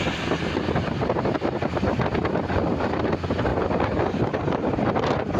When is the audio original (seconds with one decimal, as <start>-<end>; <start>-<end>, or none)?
0.0-5.4